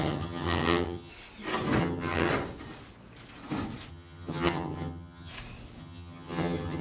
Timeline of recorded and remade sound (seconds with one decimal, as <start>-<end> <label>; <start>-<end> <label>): 0.0-1.1 remade; 1.1-1.8 recorded; 1.8-2.3 remade; 2.3-3.9 recorded; 3.9-5.3 remade; 5.3-5.8 recorded; 5.8-6.8 remade